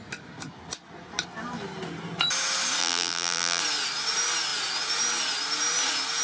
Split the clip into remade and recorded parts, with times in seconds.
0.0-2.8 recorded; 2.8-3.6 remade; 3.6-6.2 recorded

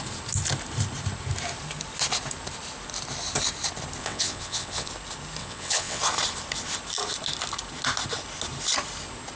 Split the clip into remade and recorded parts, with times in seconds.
0.0-4.0 recorded; 4.0-4.9 remade; 4.9-5.4 recorded; 5.4-6.0 remade; 6.0-9.4 recorded

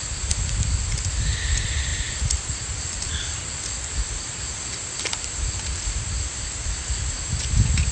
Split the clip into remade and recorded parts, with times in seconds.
0.0-7.9 remade